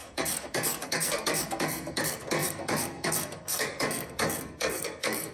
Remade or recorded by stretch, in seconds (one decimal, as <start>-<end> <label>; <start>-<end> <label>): 0.0-5.3 remade